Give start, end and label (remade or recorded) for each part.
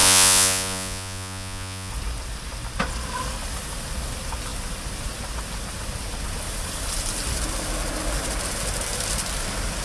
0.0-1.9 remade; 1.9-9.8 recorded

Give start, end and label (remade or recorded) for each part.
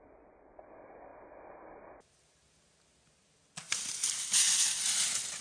0.0-5.4 recorded